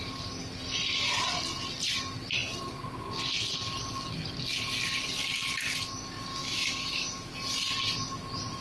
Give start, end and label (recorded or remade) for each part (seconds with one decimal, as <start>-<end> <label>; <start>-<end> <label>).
0.0-6.4 recorded; 6.4-7.3 remade; 7.3-8.6 recorded